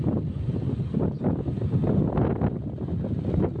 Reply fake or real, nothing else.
real